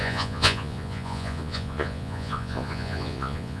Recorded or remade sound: remade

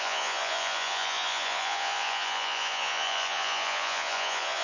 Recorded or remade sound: remade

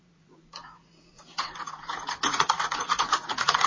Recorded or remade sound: remade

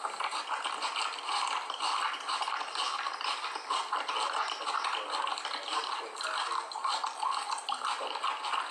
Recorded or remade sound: recorded